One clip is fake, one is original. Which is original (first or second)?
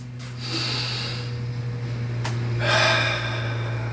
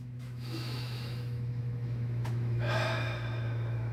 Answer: first